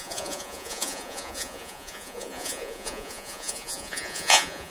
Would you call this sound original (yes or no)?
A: no